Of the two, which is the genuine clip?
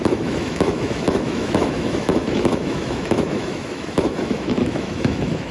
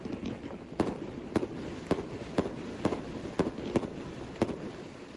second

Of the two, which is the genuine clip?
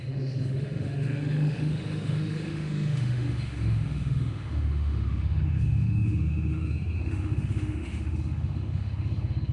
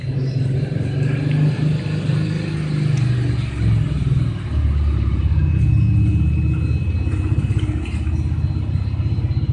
second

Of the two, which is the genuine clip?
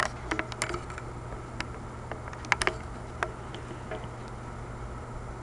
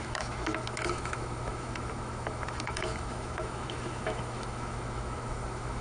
first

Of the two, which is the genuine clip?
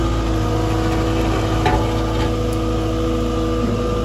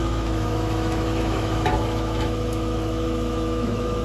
first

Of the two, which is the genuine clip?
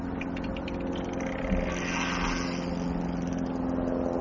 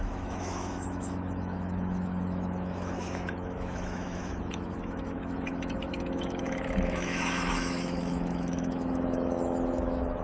first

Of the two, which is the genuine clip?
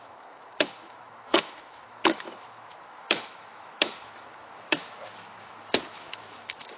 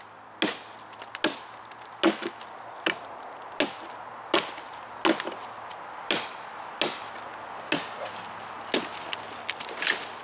second